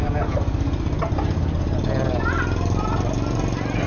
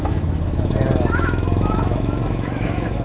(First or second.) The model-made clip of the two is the second